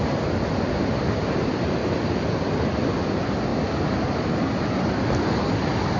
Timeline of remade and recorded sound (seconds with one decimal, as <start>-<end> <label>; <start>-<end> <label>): 0.0-6.0 recorded